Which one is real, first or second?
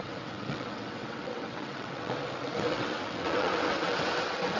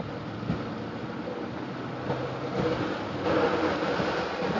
second